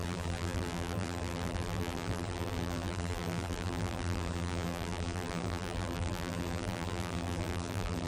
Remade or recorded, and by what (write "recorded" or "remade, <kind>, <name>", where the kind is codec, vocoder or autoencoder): remade, vocoder, BigVGAN v2